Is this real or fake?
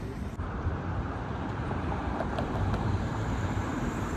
fake